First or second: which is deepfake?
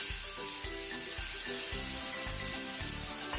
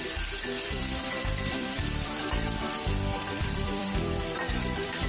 second